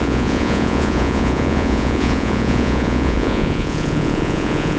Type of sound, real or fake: fake